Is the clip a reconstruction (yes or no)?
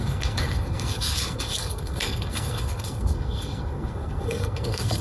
yes